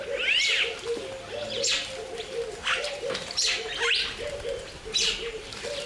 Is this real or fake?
real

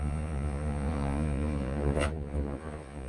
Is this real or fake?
fake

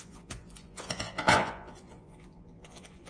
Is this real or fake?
fake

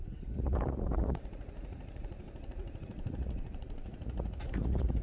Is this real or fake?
fake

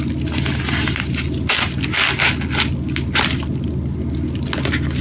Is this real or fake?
real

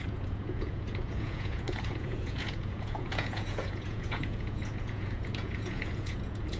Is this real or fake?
fake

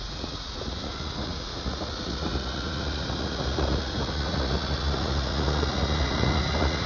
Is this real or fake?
fake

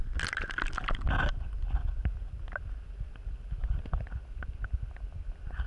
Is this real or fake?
real